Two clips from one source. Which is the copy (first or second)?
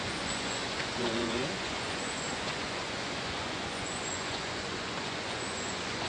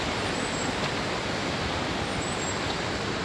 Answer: first